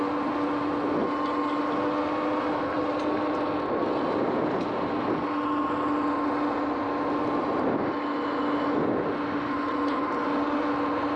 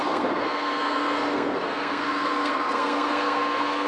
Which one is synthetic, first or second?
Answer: second